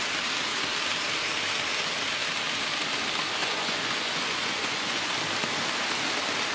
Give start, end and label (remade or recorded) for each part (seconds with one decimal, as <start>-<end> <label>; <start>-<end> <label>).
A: 0.0-3.4 recorded; 3.4-5.1 remade; 5.1-6.5 recorded